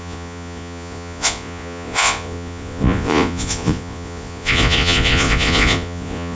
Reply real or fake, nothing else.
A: fake